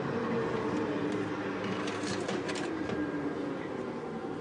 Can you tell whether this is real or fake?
real